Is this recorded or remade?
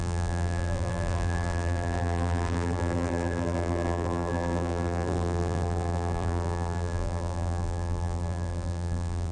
remade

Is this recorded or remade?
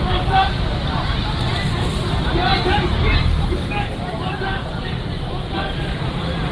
remade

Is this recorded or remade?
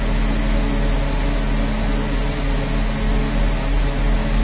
recorded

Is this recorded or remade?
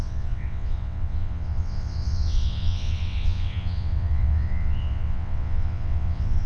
remade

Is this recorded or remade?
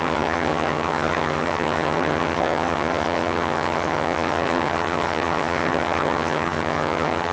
remade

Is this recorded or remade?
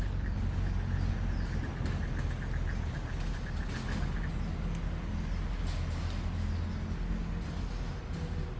recorded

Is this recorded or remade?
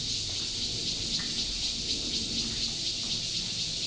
recorded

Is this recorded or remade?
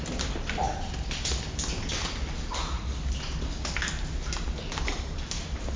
recorded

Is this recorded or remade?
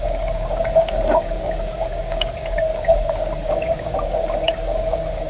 remade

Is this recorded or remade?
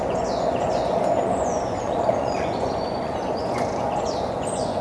remade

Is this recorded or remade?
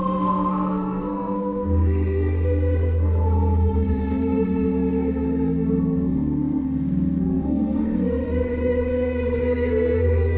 remade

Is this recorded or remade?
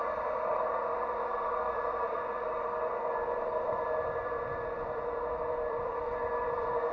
remade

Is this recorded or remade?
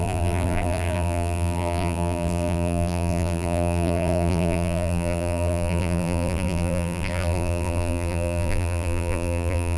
remade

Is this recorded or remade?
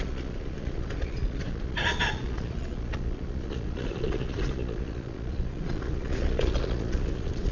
remade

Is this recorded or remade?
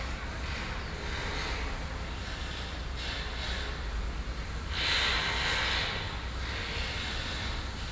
recorded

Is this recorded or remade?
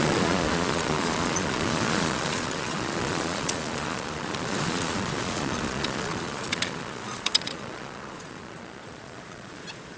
remade